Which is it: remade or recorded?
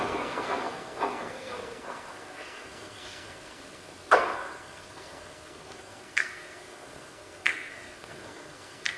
remade